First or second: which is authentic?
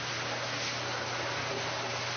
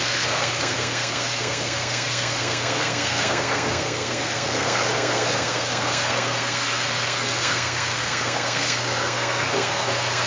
first